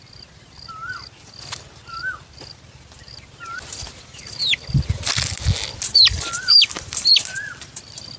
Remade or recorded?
recorded